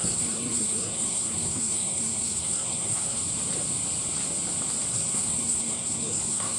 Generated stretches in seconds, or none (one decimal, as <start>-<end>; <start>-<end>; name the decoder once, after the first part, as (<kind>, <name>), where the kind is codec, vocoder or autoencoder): 0.0-3.2 (codec, SNAC); 4.9-6.6